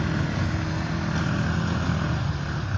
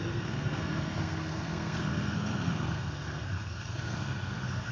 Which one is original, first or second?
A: first